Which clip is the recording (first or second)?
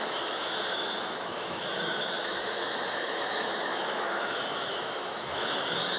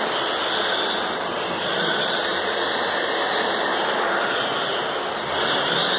second